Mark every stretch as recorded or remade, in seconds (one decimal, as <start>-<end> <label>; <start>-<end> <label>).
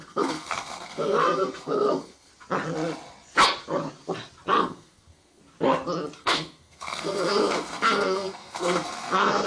0.0-2.3 remade; 2.3-4.6 recorded; 4.6-5.4 remade; 5.4-6.2 recorded; 6.2-9.5 remade